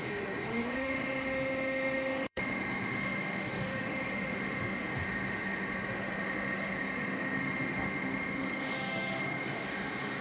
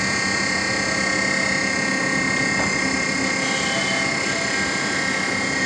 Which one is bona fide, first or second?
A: second